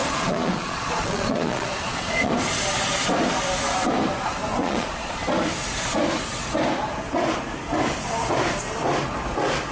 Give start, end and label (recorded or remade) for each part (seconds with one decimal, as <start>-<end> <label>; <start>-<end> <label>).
0.0-2.3 remade; 2.3-4.6 recorded; 4.6-5.2 remade; 5.2-9.7 recorded